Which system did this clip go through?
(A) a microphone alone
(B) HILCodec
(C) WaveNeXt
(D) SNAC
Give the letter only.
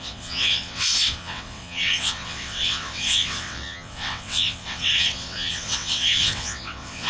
C